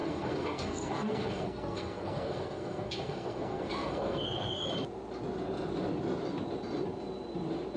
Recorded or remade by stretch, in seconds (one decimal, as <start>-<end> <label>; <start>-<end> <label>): 0.0-4.6 remade; 4.6-7.8 recorded